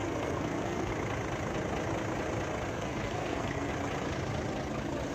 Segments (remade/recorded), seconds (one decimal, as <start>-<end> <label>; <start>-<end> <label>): 0.0-0.9 remade; 0.9-2.7 recorded; 2.7-3.7 remade; 3.7-5.1 recorded